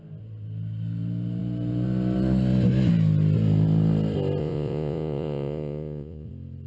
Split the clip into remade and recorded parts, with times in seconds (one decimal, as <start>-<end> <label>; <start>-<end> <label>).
0.0-4.4 recorded; 4.4-6.3 remade; 6.3-6.7 recorded